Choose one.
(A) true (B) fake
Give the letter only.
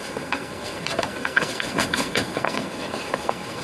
B